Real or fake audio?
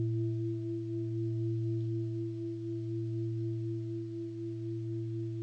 real